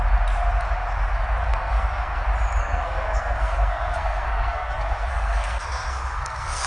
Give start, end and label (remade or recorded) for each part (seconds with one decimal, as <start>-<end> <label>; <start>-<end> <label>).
0.0-1.5 recorded; 1.5-2.2 remade; 2.2-2.6 recorded; 2.6-6.7 remade